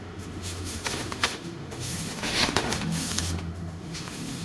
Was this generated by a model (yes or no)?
yes